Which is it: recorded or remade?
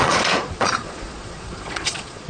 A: remade